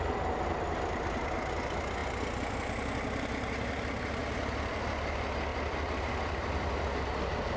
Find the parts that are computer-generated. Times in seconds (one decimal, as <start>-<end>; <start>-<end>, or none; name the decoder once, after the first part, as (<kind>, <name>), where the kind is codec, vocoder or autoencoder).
none